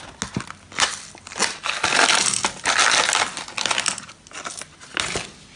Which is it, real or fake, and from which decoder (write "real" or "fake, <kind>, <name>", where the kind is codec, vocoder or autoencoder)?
real